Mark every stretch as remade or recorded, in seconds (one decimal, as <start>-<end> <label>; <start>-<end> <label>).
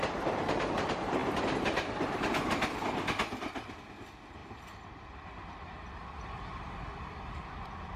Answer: 0.0-8.0 recorded